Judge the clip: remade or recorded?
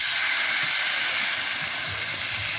recorded